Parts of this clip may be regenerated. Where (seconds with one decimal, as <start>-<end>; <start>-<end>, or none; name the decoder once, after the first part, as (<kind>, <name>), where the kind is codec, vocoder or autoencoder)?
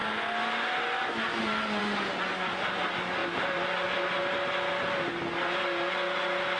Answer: none